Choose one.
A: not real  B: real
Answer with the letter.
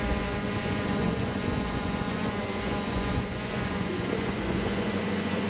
A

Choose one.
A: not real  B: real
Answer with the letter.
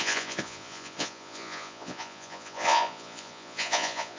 A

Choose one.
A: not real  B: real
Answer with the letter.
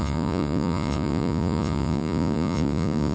A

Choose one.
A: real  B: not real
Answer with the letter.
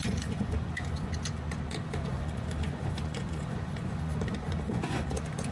B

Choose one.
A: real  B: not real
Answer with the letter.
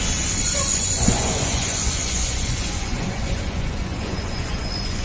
B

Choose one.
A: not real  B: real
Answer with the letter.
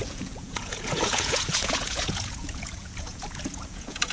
A